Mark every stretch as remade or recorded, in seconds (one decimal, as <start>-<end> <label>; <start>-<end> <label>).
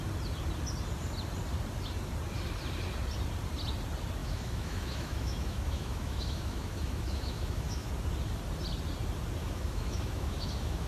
0.0-4.2 recorded; 4.2-7.9 remade; 7.9-9.4 recorded; 9.4-10.9 remade